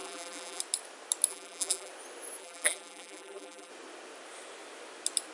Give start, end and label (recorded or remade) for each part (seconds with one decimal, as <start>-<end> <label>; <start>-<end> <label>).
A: 0.0-0.6 remade; 0.6-1.3 recorded; 1.3-1.9 remade; 1.9-2.4 recorded; 2.4-3.7 remade; 3.7-5.3 recorded